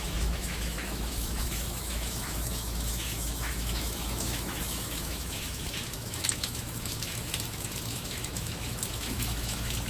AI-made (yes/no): yes